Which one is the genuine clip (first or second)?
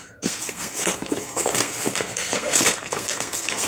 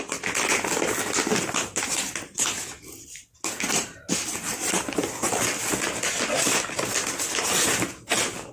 second